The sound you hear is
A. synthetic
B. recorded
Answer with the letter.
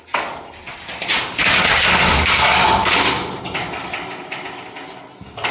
B